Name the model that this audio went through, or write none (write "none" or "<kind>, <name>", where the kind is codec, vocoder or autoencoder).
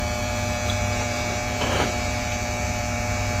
vocoder, BigVGAN v2